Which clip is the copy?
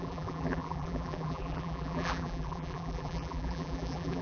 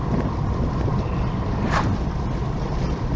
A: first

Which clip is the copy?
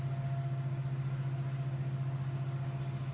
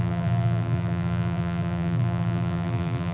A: second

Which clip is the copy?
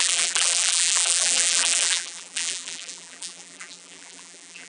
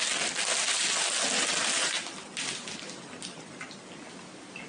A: first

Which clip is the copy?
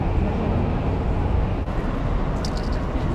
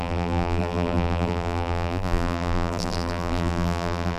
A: second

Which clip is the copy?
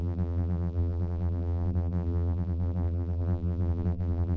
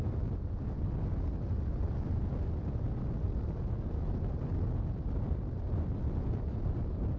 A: first